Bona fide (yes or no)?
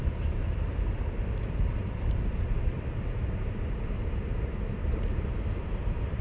no